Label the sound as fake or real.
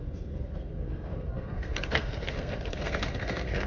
fake